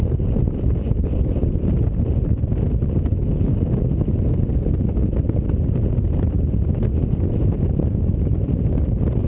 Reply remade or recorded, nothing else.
recorded